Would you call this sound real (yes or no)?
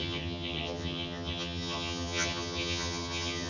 no